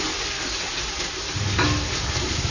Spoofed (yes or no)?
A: no